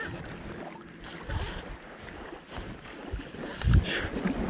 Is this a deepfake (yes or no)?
no